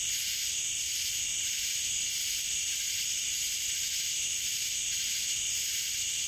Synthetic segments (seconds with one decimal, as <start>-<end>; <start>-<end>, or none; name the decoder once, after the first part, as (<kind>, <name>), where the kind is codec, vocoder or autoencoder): 1.3-5.1 (vocoder, BigVGAN v2)